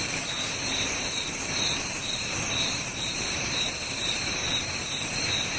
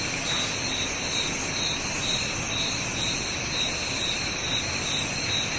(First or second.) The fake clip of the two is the first